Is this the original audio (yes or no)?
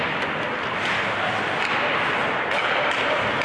yes